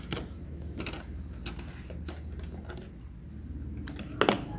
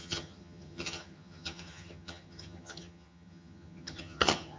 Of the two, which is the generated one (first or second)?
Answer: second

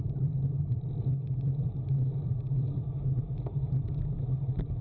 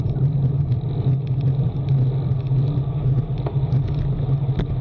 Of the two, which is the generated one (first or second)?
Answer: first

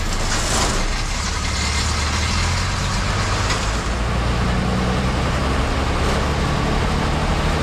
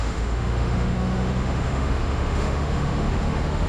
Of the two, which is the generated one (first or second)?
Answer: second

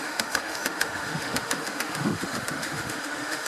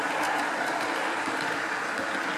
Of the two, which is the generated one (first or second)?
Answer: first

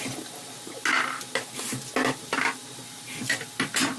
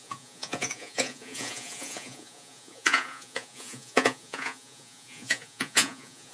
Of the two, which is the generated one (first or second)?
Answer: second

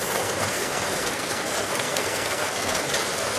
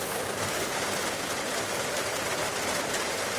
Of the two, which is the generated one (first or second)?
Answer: first